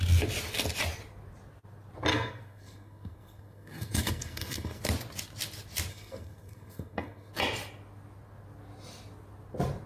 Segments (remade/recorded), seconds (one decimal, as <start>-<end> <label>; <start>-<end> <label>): 0.0-2.1 recorded; 2.1-4.8 remade; 4.8-5.9 recorded; 5.9-7.3 remade; 7.3-9.9 recorded